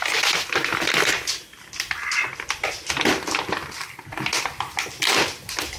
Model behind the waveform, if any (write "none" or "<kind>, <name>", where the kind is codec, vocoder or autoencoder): none